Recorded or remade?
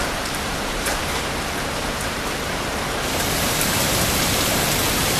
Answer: remade